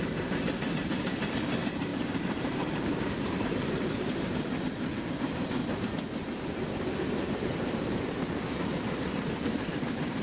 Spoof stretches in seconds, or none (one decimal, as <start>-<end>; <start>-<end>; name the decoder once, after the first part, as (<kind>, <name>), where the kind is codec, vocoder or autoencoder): 0.0-5.6 (vocoder, BigVGAN v2); 6.8-10.2